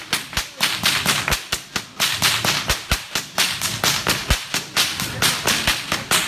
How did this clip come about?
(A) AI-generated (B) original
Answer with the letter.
B